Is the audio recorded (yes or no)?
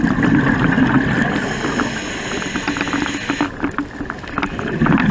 yes